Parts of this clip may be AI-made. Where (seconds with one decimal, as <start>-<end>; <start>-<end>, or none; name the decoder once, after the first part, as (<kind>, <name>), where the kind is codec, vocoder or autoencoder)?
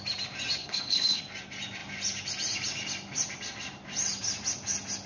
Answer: 0.6-1.2 (codec, HILCodec)